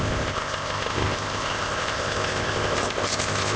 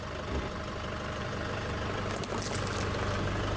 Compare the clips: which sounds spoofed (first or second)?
first